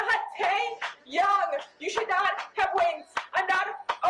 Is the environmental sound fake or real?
fake